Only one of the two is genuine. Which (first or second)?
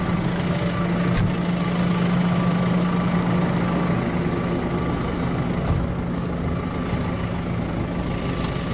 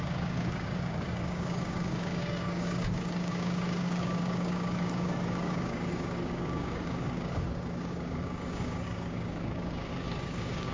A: first